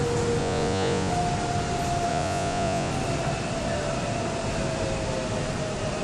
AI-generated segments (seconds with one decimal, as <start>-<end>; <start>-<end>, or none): 0.4-1.1; 2.1-2.9